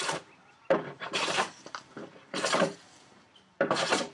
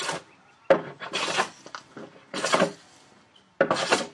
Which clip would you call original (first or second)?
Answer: second